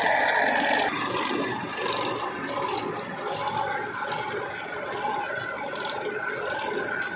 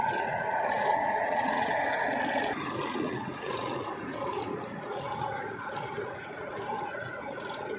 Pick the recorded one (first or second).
first